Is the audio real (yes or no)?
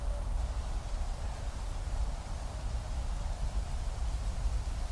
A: yes